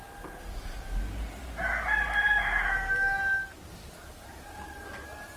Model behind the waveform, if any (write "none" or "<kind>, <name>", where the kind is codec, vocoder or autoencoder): none